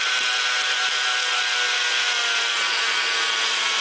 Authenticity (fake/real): real